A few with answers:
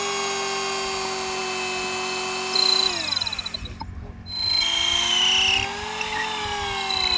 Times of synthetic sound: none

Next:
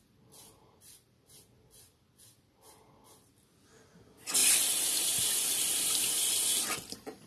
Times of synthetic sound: none

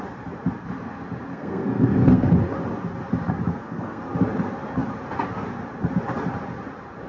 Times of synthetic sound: 1.3-2.3 (codec, SNAC); 3.5-4.0

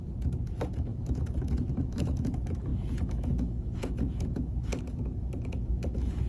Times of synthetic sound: 0.0-6.3 (autoencoder, DAC-VAE)

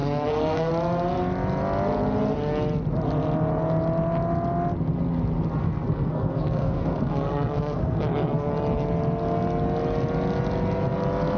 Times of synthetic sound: 0.0-0.7 (codec, SNAC); 5.6-8.5

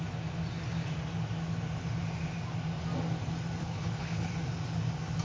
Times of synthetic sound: 3.6-4.3 (codec, HILCodec)

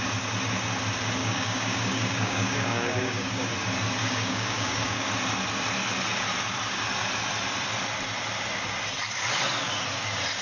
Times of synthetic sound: 1.2-3.5 (codec, DAC); 4.0-5.1